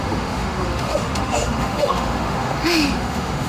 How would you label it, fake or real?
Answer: fake